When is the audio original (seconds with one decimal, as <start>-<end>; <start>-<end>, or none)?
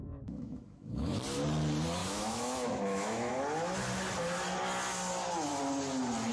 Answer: 1.2-2.0; 3.4-6.3